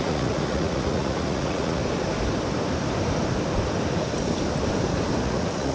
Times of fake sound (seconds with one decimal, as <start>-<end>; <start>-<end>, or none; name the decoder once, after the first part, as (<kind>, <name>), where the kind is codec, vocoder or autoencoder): 0.0-1.8 (vocoder, Vocos); 5.2-5.7